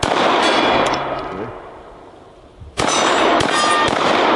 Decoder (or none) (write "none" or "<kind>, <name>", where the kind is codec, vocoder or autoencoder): vocoder, BigVGAN v2